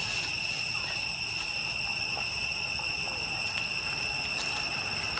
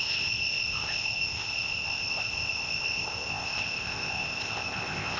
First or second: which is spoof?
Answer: second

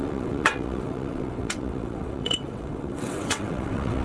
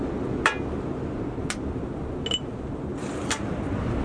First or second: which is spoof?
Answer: first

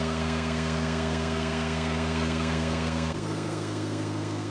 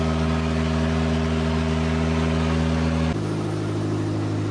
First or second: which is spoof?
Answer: first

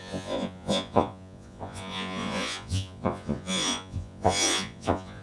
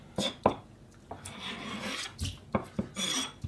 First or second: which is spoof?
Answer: first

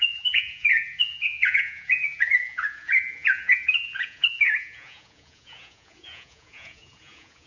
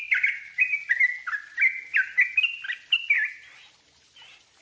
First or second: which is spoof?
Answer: first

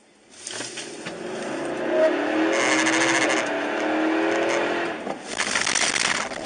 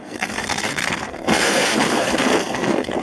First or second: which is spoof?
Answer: second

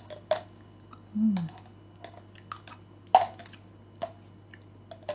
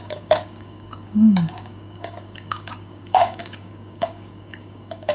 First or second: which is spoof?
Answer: second